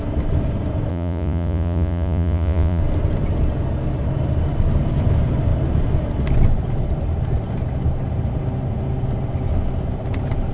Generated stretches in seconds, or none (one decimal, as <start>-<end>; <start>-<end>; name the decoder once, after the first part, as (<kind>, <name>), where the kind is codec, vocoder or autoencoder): 0.9-2.8 (vocoder, Vocos)